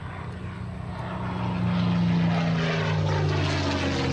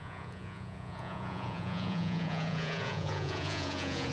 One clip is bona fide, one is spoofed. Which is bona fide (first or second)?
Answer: first